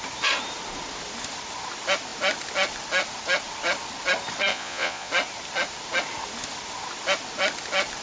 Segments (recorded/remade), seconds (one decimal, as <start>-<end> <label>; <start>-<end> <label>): 0.0-4.5 recorded; 4.5-5.1 remade; 5.1-8.0 recorded

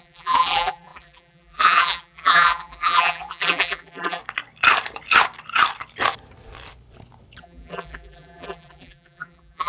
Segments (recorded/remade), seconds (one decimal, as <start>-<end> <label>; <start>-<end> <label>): 0.0-4.2 remade; 4.2-7.4 recorded; 7.4-9.7 remade

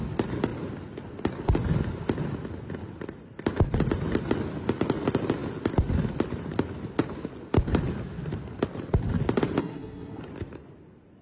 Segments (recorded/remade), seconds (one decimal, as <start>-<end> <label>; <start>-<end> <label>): 0.0-9.6 recorded; 9.6-10.2 remade; 10.2-11.2 recorded